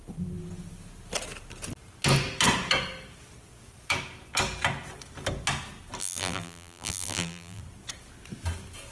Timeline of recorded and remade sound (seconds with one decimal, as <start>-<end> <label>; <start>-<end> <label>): 0.0-6.0 recorded; 6.0-7.6 remade; 7.6-8.9 recorded